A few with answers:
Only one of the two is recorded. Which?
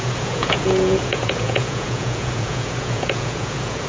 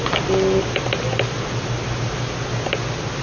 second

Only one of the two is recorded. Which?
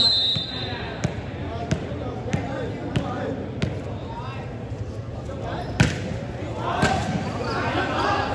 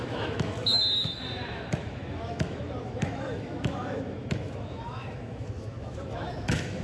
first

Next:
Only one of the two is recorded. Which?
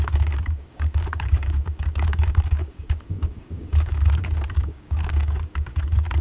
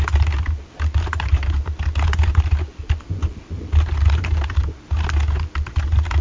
second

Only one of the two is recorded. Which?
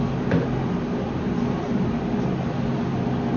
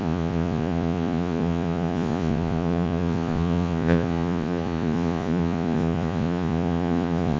first